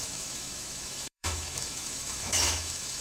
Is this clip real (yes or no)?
no